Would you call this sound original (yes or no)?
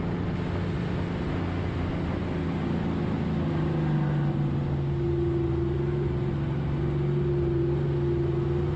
yes